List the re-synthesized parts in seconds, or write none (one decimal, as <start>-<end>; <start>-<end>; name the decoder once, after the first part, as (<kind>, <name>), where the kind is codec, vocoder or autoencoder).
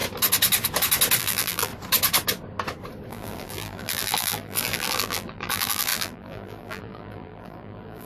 1.2-1.7 (vocoder, BigVGAN v2); 3.1-8.1